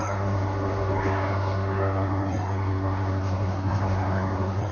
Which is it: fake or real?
fake